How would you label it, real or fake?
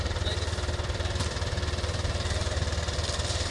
fake